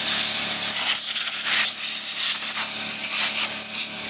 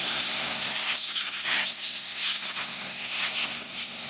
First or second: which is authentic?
first